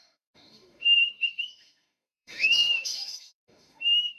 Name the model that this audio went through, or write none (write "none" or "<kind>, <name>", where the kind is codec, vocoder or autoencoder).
autoencoder, DAC-VAE